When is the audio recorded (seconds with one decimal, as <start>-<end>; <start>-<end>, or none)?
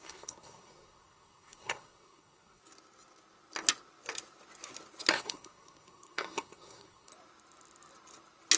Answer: 2.6-5.1; 7.1-8.6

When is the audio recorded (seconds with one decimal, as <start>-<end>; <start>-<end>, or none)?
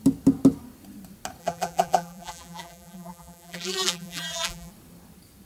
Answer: 0.0-1.4; 4.7-5.5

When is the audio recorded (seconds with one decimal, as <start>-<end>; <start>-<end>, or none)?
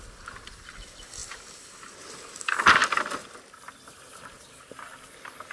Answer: 0.0-2.8; 4.3-5.5